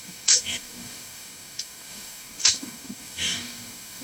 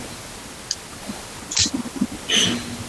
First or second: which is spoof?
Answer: first